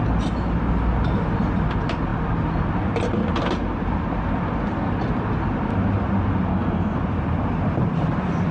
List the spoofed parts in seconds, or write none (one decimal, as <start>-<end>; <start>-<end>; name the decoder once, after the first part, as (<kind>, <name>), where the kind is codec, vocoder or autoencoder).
6.5-7.0 (codec, SNAC)